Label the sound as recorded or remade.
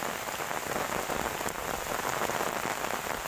recorded